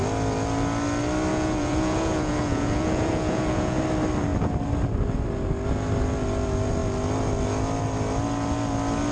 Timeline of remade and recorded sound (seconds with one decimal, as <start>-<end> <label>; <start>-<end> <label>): 0.0-1.3 recorded; 1.3-3.8 remade; 3.8-9.1 recorded